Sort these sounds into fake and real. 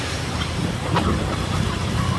real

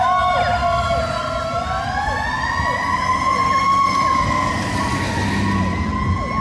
real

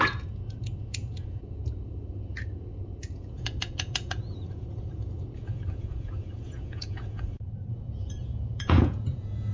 fake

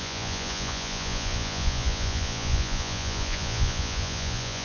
fake